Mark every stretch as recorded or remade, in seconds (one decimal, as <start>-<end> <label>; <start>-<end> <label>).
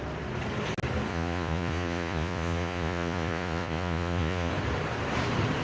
0.0-1.1 recorded; 1.1-4.5 remade; 4.5-5.6 recorded